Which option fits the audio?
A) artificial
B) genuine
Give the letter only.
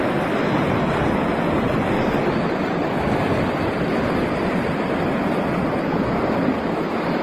A